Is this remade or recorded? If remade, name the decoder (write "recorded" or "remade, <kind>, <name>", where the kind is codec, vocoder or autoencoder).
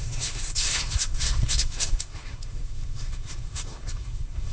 remade, codec, SNAC